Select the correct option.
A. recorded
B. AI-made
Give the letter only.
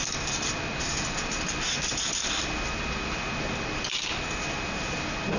B